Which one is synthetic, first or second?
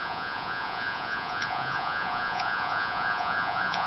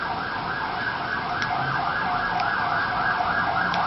first